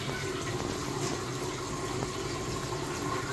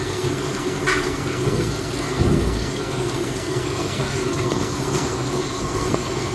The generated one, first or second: second